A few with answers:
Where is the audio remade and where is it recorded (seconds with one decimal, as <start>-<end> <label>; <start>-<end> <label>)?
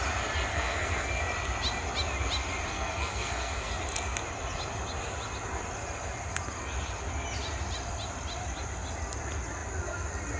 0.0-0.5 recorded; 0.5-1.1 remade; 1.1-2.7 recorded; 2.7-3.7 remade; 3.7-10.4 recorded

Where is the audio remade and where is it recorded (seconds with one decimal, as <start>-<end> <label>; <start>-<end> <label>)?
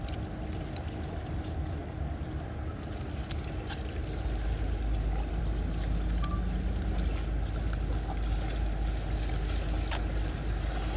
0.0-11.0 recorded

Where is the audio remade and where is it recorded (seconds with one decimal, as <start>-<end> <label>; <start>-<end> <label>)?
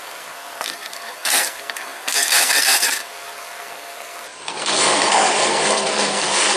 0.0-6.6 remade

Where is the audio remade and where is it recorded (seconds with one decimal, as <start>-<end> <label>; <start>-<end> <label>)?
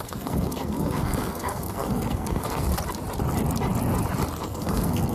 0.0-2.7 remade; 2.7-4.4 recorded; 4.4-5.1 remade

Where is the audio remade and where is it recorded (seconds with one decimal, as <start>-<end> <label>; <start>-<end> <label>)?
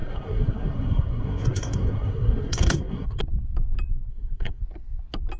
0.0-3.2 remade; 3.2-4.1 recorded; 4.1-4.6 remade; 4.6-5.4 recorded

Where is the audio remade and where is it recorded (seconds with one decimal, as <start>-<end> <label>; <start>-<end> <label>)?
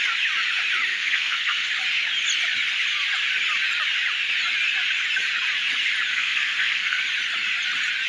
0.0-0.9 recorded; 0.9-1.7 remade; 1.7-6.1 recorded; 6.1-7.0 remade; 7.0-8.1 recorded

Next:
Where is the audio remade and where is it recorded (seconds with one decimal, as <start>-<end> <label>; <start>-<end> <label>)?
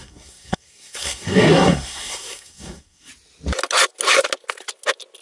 0.0-3.1 remade; 3.1-5.2 recorded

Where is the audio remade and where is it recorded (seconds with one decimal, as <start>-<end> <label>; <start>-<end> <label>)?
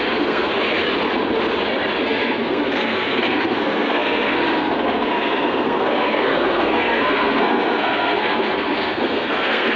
0.0-0.5 remade; 0.5-2.0 recorded; 2.0-9.8 remade